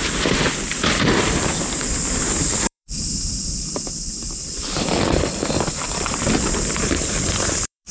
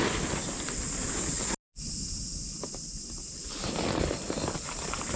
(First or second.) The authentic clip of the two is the second